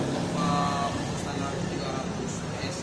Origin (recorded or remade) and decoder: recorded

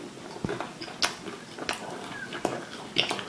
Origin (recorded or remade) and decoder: recorded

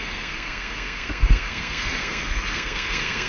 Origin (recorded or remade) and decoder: remade, codec, SNAC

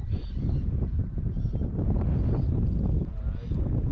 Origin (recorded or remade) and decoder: recorded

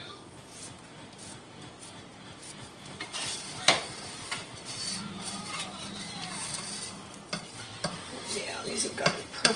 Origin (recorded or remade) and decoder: remade, vocoder, BigVGAN v2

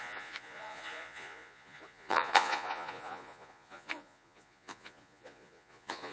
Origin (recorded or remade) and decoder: remade, vocoder, Vocos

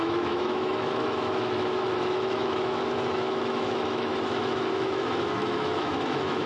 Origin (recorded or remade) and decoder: remade, autoencoder, DAC-VAE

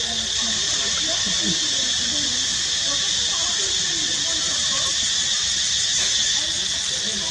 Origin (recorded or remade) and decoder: recorded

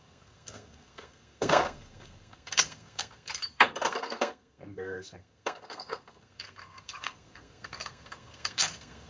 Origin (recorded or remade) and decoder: remade, codec, SNAC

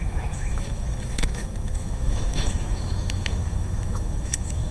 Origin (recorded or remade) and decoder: remade, autoencoder, DAC-VAE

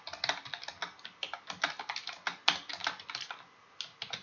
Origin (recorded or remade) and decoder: recorded